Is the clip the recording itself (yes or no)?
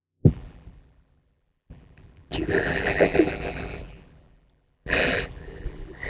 no